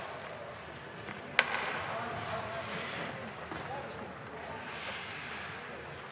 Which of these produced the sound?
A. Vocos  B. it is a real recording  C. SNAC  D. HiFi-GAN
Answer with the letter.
B